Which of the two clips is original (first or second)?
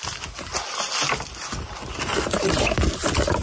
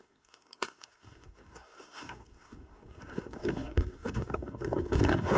first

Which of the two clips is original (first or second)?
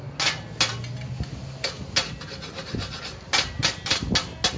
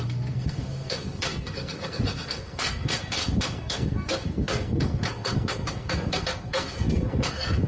first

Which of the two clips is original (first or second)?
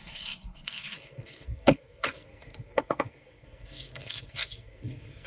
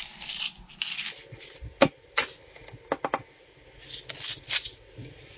second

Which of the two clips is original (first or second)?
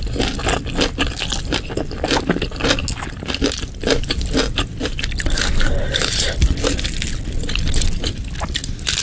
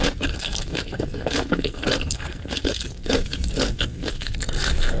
first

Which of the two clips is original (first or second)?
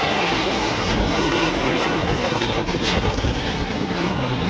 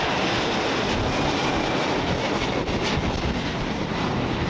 second